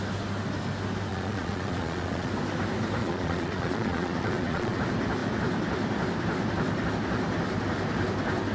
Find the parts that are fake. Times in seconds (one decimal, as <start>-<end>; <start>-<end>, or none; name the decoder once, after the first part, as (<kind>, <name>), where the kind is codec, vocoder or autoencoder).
1.1-2.3 (vocoder, Vocos); 3.0-4.8